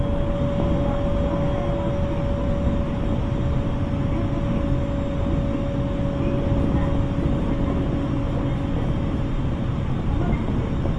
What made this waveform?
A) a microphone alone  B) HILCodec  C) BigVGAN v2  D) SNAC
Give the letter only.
A